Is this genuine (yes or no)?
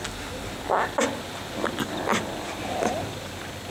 yes